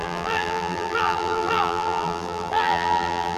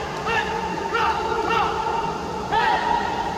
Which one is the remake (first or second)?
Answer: first